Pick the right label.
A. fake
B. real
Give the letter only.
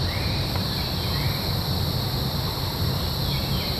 A